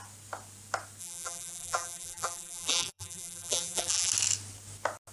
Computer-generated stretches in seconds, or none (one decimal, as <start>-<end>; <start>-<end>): 1.0-4.1